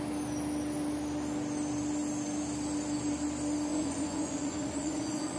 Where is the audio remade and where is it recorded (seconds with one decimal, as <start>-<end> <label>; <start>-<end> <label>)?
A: 0.0-3.7 recorded; 3.7-5.4 remade